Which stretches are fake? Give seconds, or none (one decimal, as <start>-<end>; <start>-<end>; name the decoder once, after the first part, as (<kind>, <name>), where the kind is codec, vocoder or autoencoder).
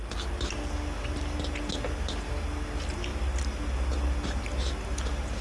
none